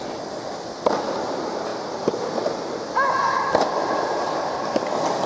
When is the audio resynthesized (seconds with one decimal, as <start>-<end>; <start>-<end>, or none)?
0.0-1.7; 3.1-5.3